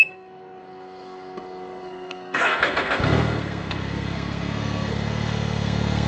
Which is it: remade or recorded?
remade